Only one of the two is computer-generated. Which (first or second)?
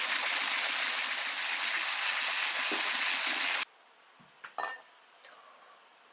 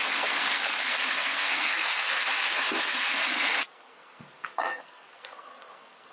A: second